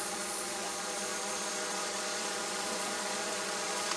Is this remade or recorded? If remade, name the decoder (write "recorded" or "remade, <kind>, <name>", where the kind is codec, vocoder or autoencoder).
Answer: remade, vocoder, Vocos